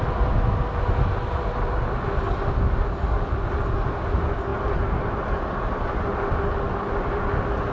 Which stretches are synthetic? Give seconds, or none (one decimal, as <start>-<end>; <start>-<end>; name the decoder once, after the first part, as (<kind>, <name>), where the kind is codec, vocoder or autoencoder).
none